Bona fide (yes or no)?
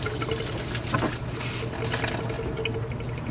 yes